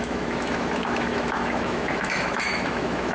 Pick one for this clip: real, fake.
fake